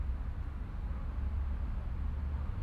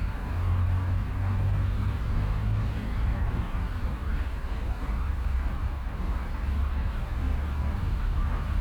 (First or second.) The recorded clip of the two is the first